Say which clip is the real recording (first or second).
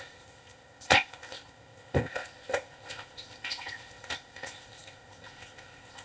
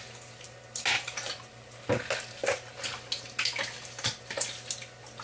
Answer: second